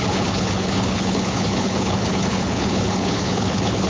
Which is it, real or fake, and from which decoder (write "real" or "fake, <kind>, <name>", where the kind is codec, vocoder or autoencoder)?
fake, codec, HILCodec